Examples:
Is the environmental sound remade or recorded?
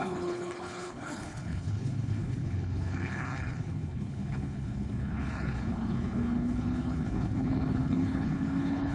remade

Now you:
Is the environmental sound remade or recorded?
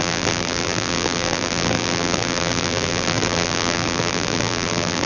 remade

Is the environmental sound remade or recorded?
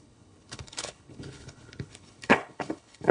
remade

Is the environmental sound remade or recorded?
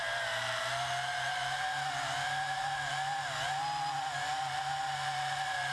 recorded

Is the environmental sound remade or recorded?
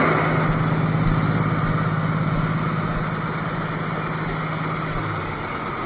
recorded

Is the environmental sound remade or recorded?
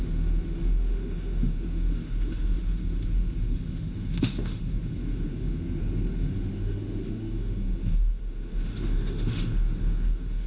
remade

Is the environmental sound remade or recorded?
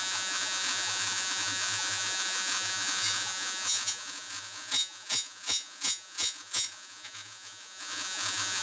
remade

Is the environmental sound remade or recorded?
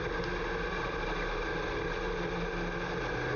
recorded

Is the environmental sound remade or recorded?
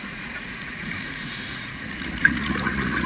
remade